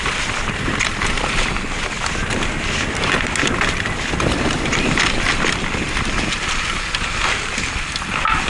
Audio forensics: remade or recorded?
recorded